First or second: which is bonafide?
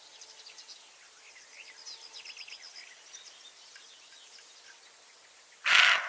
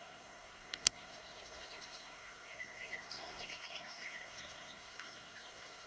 first